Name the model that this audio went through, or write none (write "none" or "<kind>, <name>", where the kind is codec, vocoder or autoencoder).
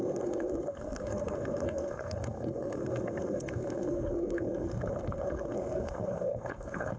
codec, SNAC